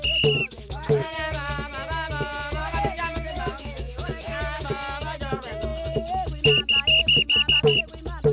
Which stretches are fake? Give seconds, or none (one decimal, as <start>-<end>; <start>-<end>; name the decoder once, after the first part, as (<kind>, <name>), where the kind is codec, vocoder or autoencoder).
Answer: 0.4-1.5 (autoencoder, DAC-VAE); 2.6-4.7